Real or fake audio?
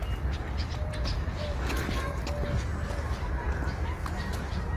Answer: real